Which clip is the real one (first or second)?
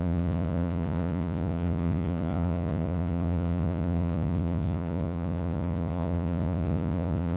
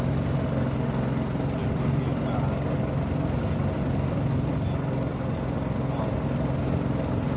second